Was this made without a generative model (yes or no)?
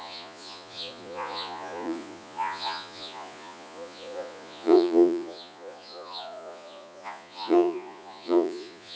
no